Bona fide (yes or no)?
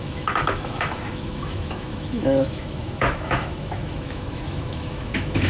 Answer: no